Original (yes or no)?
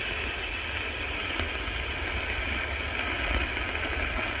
yes